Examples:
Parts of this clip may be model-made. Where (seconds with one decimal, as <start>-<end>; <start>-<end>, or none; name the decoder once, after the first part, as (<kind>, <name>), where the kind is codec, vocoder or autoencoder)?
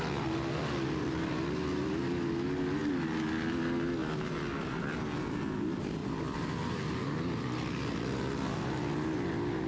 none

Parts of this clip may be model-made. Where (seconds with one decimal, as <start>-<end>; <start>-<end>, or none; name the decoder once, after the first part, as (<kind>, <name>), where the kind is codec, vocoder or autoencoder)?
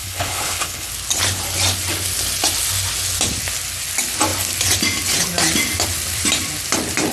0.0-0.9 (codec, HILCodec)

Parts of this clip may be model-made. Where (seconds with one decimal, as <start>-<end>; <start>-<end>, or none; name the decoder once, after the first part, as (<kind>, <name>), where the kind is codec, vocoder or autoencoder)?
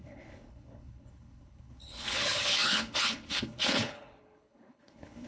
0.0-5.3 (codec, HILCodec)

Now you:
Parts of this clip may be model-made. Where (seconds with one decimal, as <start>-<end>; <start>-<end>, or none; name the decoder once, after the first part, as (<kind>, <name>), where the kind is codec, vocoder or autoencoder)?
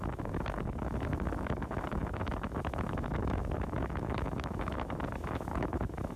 0.0-6.2 (autoencoder, DAC-VAE)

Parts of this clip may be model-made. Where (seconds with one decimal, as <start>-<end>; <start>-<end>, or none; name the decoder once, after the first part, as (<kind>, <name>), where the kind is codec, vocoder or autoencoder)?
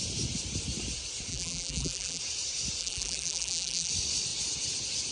1.3-2.2 (vocoder, BigVGAN v2); 2.8-3.9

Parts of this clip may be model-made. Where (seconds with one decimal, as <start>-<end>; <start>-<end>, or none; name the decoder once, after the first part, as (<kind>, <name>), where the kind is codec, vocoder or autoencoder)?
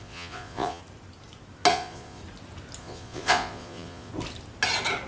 0.0-0.8 (vocoder, Vocos); 1.7-2.2; 2.8-4.1